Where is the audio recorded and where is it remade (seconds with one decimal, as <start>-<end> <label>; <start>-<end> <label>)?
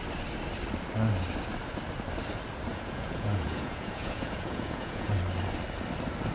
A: 0.0-2.7 recorded; 2.7-5.1 remade; 5.1-6.3 recorded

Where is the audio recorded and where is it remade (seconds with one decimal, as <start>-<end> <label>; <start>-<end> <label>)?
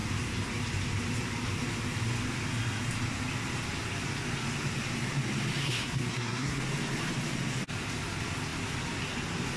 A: 0.0-5.6 recorded; 5.6-6.6 remade; 6.6-9.6 recorded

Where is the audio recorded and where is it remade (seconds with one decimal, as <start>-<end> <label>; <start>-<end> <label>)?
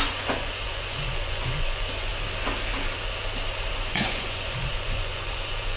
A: 0.0-2.1 remade; 2.1-3.7 recorded; 3.7-5.8 remade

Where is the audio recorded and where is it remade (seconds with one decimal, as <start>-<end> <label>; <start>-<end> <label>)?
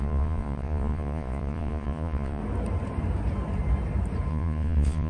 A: 0.0-2.4 remade; 2.4-4.3 recorded; 4.3-5.1 remade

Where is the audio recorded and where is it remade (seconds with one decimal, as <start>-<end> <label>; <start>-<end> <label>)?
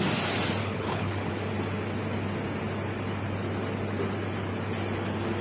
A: 0.0-0.6 recorded; 0.6-1.3 remade; 1.3-5.4 recorded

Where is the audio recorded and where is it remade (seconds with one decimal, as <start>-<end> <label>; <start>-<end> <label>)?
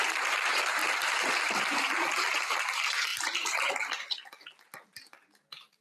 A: 0.0-5.8 recorded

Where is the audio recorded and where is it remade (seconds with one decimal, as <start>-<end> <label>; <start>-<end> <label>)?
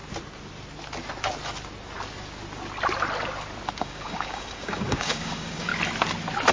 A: 0.0-3.8 recorded; 3.8-5.7 remade; 5.7-6.5 recorded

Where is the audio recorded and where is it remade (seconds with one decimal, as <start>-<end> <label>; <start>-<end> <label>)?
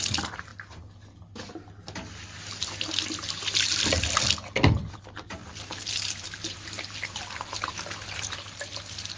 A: 0.0-9.2 recorded